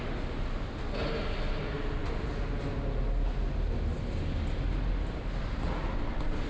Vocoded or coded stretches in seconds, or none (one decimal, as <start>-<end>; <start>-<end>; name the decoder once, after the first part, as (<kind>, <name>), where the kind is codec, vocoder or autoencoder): none